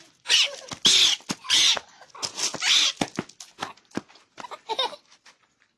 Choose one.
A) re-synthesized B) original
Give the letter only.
B